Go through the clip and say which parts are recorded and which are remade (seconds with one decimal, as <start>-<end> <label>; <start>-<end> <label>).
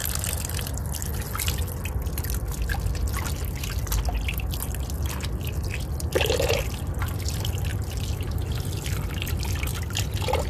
0.0-10.5 recorded